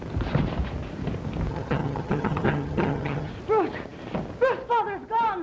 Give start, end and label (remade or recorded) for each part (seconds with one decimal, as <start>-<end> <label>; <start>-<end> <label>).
0.0-1.5 recorded; 1.5-3.3 remade; 3.3-5.4 recorded